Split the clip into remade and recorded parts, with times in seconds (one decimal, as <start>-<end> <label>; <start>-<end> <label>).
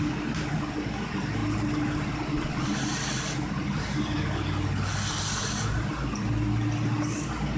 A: 0.0-7.6 recorded